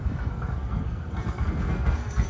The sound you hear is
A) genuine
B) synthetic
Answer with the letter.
B